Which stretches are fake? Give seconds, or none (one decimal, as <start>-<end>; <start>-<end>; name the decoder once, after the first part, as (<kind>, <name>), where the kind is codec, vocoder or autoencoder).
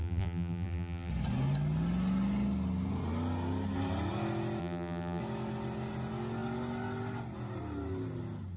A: 0.0-1.1 (vocoder, BigVGAN v2); 4.6-5.2